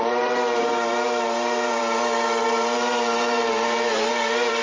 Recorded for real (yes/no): no